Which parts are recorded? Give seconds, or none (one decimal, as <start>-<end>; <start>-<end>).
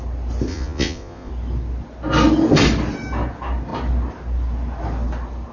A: 0.0-0.5; 1.3-5.5